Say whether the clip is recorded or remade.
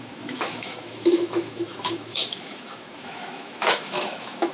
remade